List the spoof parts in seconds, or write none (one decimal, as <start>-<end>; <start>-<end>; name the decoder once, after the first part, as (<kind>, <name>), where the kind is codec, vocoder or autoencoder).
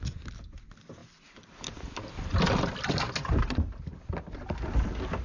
none